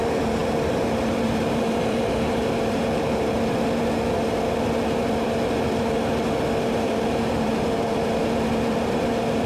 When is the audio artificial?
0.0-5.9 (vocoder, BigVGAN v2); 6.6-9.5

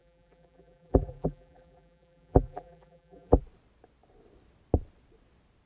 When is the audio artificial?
0.0-3.4 (vocoder, BigVGAN v2)

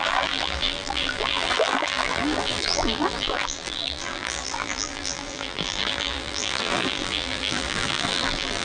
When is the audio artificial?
0.0-8.6 (vocoder, BigVGAN v2)

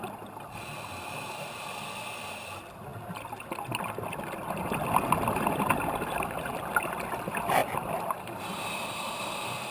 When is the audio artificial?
7.6-9.2 (vocoder, BigVGAN v2)

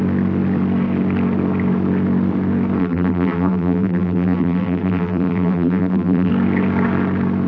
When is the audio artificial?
2.8-6.3 (vocoder, BigVGAN v2)